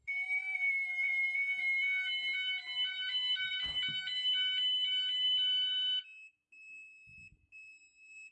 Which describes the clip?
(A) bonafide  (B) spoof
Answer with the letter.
A